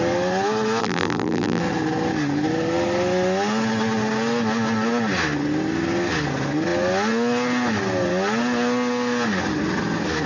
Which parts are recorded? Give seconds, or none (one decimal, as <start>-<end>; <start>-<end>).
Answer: 0.0-0.8; 1.6-10.3